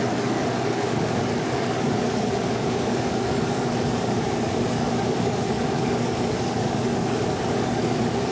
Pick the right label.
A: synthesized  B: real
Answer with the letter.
A